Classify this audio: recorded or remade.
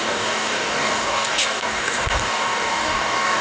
remade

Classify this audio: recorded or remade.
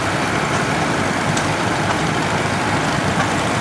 remade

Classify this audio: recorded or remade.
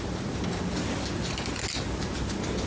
recorded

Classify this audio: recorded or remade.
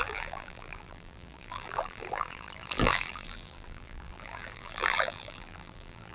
remade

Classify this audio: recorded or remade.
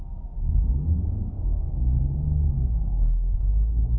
remade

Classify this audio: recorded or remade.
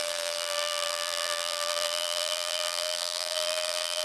remade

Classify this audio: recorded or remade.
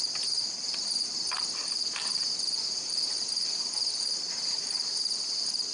remade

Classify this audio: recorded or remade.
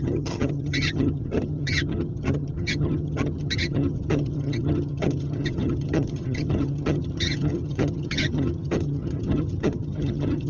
remade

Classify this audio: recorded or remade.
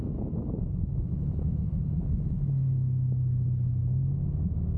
remade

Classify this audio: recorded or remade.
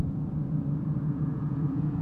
remade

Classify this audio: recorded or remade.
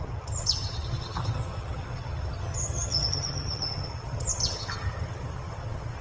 remade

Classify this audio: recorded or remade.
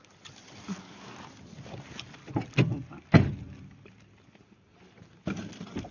recorded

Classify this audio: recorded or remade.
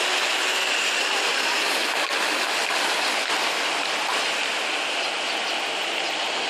recorded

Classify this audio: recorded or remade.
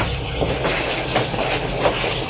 recorded